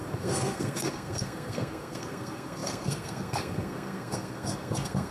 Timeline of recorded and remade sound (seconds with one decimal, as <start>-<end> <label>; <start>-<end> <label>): 0.0-5.1 remade